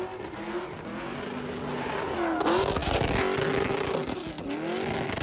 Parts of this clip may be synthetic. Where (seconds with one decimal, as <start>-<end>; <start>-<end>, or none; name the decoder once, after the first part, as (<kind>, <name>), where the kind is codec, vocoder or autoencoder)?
none